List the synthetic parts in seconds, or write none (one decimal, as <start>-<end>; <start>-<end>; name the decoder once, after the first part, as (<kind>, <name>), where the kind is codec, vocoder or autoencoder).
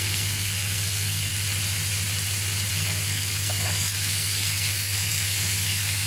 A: 0.0-1.3 (codec, SNAC); 2.7-6.1